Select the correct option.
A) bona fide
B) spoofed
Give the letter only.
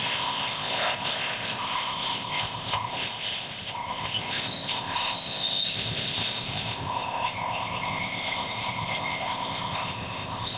B